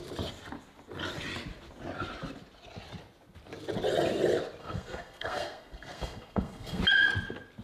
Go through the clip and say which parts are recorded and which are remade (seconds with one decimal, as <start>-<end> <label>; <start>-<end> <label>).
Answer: 0.0-4.6 recorded; 4.6-6.8 remade; 6.8-7.6 recorded

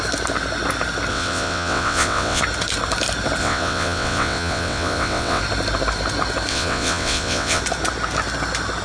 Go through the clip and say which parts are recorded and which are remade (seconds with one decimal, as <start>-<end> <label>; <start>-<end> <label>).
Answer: 0.0-1.1 recorded; 1.1-2.4 remade; 2.4-3.4 recorded; 3.4-5.4 remade; 5.4-6.5 recorded; 6.5-7.6 remade; 7.6-8.8 recorded

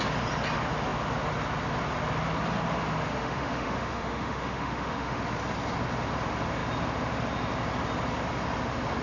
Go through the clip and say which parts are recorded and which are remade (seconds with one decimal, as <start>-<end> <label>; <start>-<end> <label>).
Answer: 0.0-3.2 recorded; 3.2-5.2 remade; 5.2-9.0 recorded

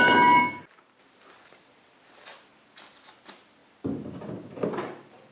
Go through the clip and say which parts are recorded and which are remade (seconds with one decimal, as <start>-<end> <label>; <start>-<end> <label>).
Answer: 0.0-5.3 recorded

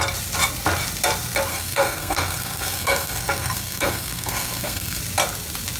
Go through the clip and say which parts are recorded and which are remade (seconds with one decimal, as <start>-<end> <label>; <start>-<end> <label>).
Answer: 0.0-1.5 recorded; 1.5-5.0 remade; 5.0-5.8 recorded

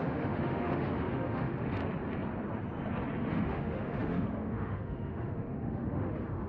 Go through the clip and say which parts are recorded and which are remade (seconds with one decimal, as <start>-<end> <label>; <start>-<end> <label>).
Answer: 0.0-1.8 remade; 1.8-3.2 recorded; 3.2-6.5 remade

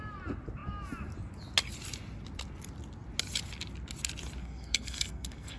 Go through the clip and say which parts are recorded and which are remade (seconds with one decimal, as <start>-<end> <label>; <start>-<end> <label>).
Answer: 0.0-4.4 recorded; 4.4-5.6 remade